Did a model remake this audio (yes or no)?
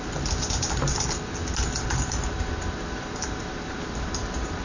no